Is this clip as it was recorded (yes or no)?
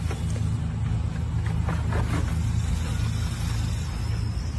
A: yes